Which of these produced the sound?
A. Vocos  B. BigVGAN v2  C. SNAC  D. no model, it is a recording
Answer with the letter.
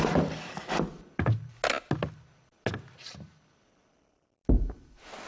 D